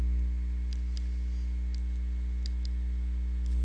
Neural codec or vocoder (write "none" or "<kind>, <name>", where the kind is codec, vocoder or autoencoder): none